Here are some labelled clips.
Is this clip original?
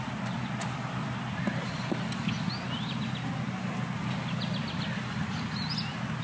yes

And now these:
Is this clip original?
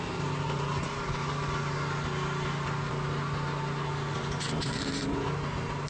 yes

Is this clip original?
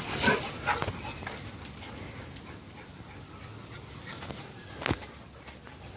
yes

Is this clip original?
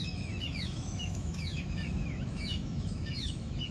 no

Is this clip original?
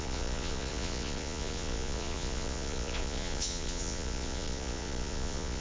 no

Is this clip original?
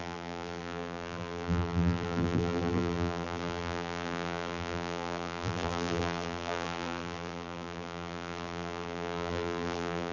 no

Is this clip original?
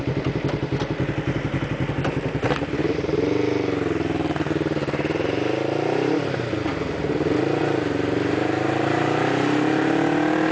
yes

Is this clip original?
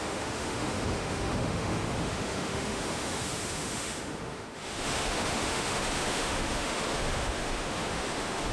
no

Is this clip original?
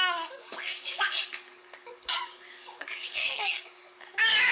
no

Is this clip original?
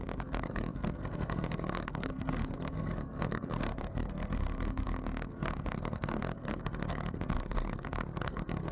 no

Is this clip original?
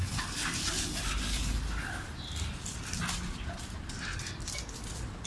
yes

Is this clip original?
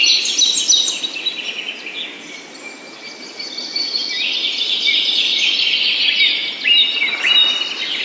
yes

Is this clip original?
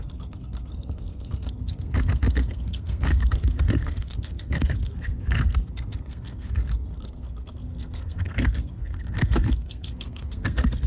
no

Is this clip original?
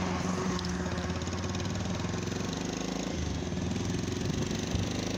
yes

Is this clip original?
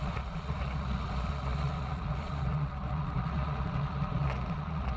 no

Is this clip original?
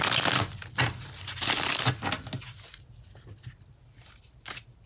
yes